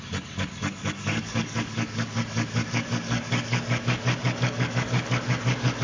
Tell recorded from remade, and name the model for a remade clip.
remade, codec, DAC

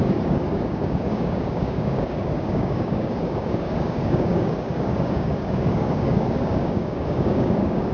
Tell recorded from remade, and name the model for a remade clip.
remade, codec, DAC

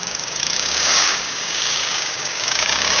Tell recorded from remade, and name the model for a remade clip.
remade, codec, DAC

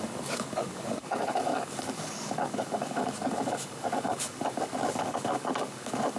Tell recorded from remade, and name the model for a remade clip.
remade, codec, DAC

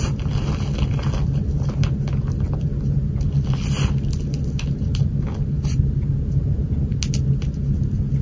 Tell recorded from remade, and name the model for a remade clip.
recorded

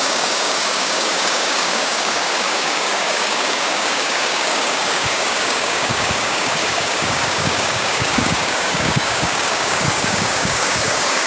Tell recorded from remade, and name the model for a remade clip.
remade, codec, DAC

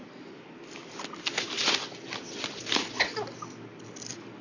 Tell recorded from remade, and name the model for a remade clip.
recorded